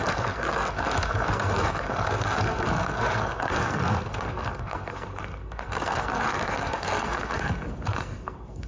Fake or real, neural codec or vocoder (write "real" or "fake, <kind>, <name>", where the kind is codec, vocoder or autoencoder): fake, codec, SNAC